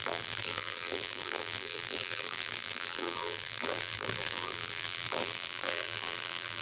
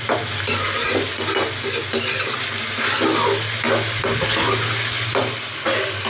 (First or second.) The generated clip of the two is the first